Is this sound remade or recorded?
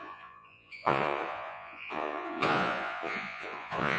remade